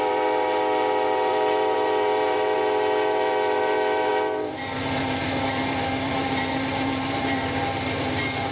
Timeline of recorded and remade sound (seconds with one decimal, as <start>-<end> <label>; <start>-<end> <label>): 0.0-8.5 remade